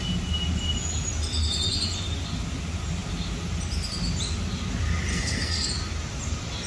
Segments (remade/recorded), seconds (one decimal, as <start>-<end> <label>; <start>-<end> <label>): 0.0-5.1 recorded; 5.1-5.7 remade; 5.7-6.7 recorded